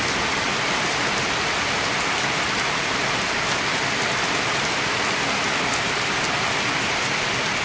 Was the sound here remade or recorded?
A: recorded